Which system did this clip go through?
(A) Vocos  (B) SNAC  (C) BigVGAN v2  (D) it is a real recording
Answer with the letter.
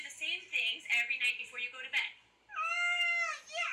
D